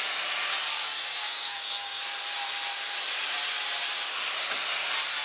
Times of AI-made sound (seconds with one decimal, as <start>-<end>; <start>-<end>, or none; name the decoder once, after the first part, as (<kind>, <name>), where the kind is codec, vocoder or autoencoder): 0.7-2.0 (codec, DAC)